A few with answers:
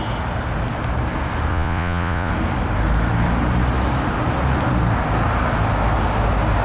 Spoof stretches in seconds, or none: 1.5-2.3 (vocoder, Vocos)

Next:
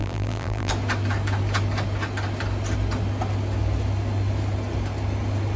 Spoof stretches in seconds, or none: 0.0-0.7 (vocoder, BigVGAN v2)

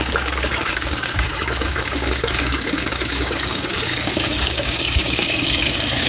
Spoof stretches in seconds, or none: 0.0-6.1 (codec, DAC)

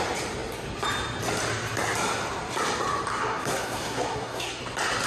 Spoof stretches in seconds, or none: 3.1-4.6 (codec, SNAC)